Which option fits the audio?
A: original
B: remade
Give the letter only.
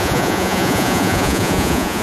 B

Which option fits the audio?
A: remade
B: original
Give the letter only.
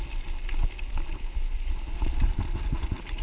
B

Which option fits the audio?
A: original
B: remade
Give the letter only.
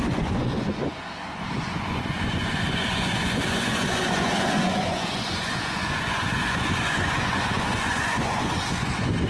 B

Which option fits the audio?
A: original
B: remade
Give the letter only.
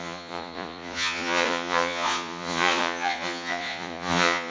B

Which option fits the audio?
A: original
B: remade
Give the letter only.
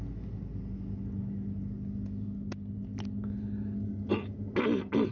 A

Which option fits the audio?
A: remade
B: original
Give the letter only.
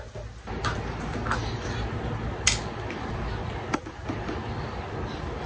B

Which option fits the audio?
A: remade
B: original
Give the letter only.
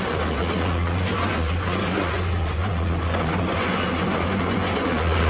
A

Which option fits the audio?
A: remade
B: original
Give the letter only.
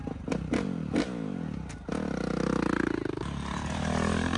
B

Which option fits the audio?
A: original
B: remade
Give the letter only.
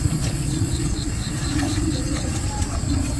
B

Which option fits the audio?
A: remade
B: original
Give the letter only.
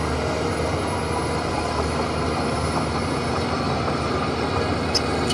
B